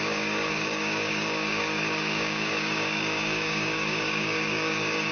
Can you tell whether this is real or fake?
fake